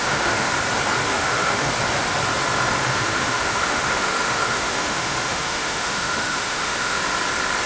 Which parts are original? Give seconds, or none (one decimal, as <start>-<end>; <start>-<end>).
0.5-1.1; 1.7-2.8; 7.0-7.7